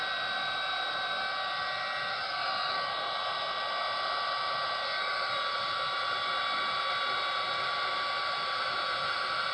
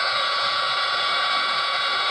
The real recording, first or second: first